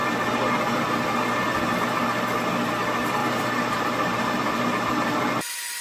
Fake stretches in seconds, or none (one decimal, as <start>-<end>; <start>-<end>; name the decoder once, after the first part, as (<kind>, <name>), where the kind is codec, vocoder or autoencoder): 3.2-5.3 (vocoder, BigVGAN v2)